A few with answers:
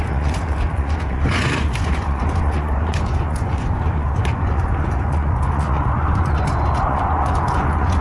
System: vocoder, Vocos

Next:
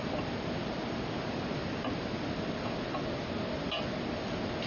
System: none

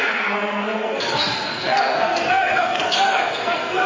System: codec, SNAC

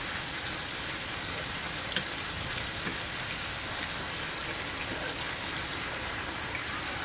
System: none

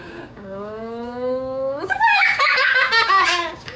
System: codec, DAC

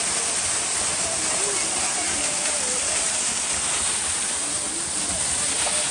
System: none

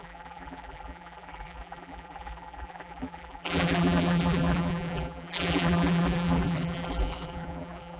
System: vocoder, BigVGAN v2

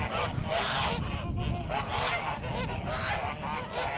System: none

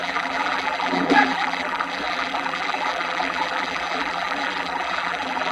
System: vocoder, BigVGAN v2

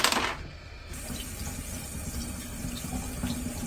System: none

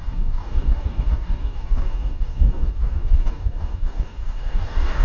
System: codec, DAC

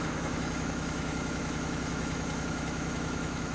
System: autoencoder, DAC-VAE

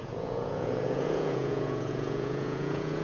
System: vocoder, Vocos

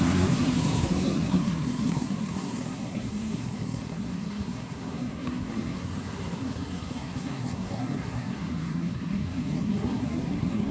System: codec, SNAC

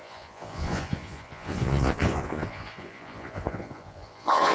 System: vocoder, Vocos